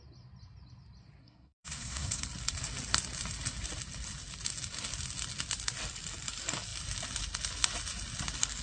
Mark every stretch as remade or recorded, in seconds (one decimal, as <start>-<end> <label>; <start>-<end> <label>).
0.0-1.2 recorded; 1.2-2.2 remade; 2.2-8.6 recorded